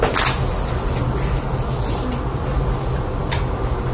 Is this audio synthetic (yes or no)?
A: no